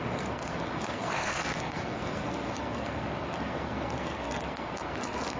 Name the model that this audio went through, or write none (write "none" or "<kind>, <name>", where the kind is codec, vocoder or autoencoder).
codec, SNAC